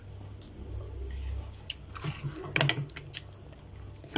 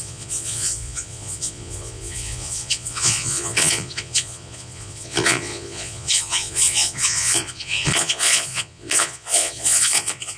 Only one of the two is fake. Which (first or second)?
second